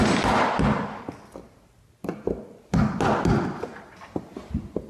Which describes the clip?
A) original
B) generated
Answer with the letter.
A